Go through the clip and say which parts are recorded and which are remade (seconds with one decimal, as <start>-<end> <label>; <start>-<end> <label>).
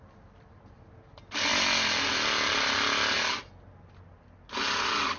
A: 0.0-5.2 recorded